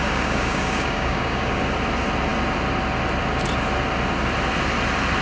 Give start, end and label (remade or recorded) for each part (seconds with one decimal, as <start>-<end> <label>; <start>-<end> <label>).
0.0-1.6 remade; 1.6-5.2 recorded